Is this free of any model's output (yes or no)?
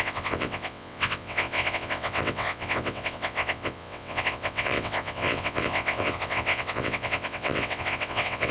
no